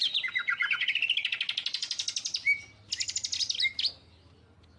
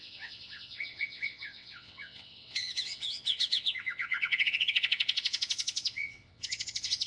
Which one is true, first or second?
first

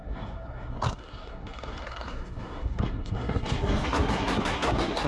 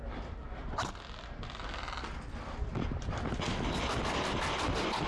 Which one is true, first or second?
second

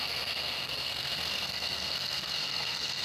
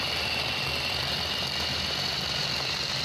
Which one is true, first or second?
second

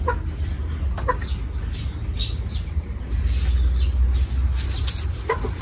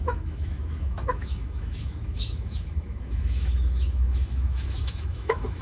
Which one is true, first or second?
first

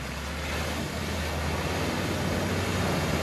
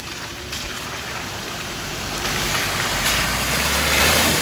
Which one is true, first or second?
first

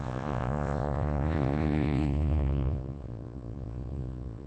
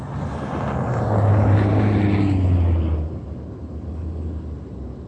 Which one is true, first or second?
second